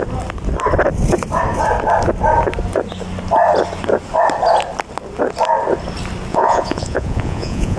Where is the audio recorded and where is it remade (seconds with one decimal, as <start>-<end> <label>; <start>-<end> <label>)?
0.0-6.3 recorded; 6.3-7.8 remade